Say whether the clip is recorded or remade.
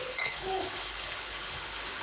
remade